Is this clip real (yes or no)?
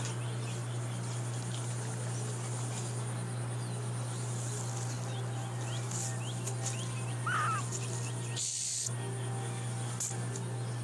yes